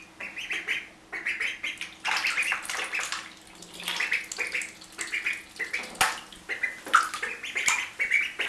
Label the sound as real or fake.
real